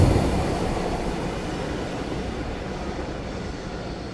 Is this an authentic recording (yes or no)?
yes